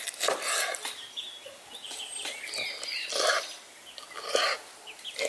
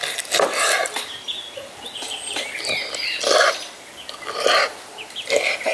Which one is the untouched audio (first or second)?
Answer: first